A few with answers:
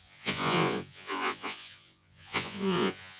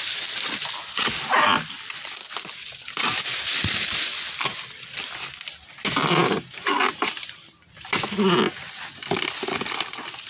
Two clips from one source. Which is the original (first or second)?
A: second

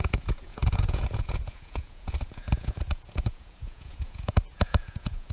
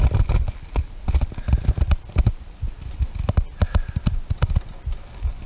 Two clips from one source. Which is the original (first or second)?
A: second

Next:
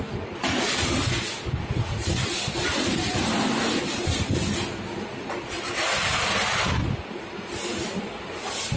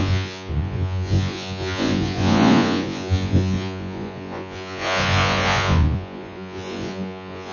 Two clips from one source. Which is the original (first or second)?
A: first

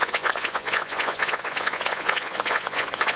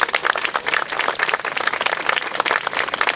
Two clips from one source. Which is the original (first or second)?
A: second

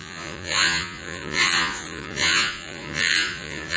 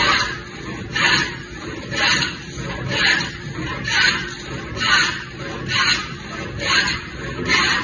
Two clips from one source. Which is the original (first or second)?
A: second